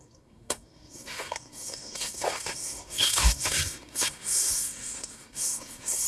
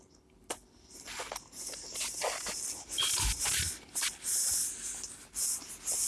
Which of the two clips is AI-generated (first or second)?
first